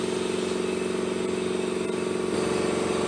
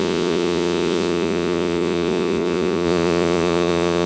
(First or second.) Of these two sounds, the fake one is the second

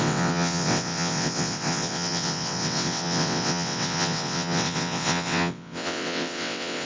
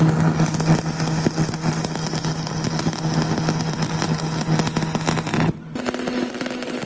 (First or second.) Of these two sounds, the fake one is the first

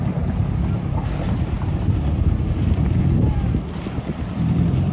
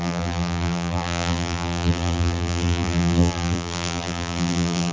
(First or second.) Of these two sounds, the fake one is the second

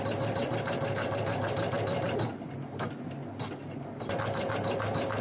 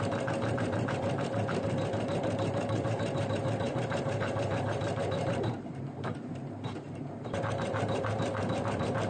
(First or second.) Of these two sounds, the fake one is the second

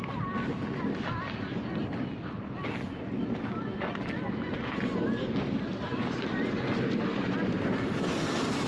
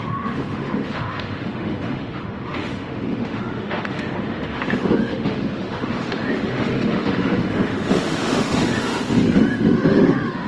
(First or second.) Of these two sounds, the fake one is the second